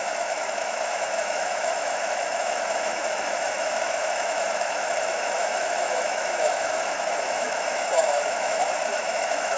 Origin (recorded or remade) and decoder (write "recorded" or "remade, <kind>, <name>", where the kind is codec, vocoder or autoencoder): remade, autoencoder, DAC-VAE